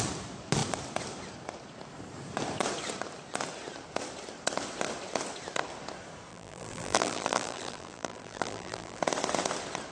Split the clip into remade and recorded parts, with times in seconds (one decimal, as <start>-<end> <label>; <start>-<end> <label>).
0.0-6.3 recorded; 6.3-9.0 remade; 9.0-9.9 recorded